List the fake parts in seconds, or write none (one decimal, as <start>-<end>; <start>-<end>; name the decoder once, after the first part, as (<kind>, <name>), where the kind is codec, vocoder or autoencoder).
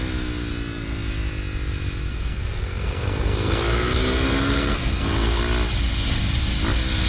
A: 2.1-5.4 (codec, SNAC)